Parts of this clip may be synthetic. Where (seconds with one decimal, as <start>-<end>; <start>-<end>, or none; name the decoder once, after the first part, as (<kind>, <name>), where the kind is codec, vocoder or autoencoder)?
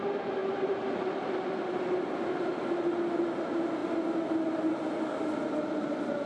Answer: 0.4-2.2 (vocoder, BigVGAN v2)